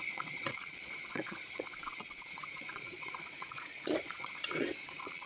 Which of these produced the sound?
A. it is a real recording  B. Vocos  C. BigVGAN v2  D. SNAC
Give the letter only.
B